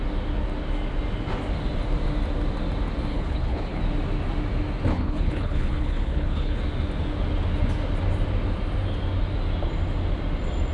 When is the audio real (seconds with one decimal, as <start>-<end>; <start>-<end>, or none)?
0.0-3.1; 3.8-4.9; 6.6-10.7